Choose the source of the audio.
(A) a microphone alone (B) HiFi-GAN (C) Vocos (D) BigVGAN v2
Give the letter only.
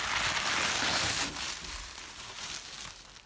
A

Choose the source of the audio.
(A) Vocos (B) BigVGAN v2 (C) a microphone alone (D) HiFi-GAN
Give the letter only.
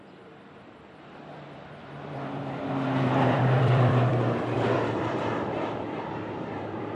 B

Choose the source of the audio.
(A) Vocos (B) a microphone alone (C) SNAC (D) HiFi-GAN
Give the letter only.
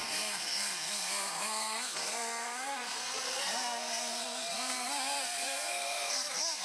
C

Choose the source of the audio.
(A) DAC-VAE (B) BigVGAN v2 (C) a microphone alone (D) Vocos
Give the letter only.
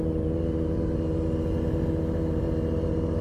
C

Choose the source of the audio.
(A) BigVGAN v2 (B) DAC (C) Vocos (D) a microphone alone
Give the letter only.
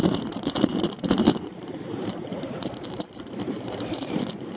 A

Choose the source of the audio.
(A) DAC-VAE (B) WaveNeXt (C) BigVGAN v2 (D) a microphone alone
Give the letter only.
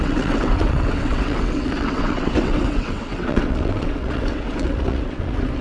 B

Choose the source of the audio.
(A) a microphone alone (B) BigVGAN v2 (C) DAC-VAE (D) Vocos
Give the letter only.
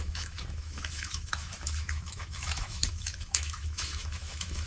C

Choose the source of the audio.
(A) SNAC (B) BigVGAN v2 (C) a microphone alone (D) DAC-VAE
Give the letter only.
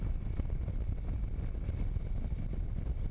C